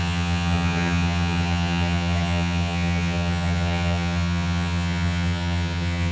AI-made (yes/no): yes